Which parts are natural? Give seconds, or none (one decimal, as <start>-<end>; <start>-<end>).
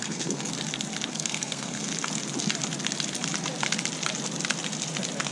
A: 0.5-1.1; 1.9-5.3